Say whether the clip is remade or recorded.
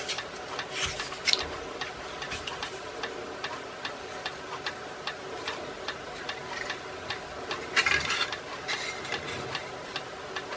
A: recorded